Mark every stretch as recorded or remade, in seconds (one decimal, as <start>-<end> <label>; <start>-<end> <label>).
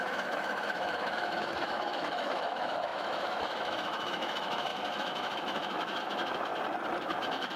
0.0-6.5 remade; 6.5-7.0 recorded; 7.0-7.6 remade